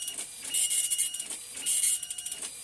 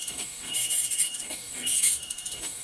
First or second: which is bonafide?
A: first